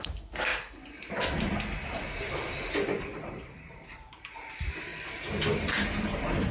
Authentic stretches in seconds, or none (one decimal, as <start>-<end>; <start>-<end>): 0.5-3.0; 4.9-5.6